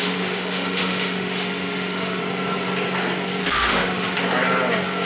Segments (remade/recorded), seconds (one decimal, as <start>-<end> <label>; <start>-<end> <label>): 0.0-2.2 remade; 2.2-3.4 recorded; 3.4-4.2 remade; 4.2-5.1 recorded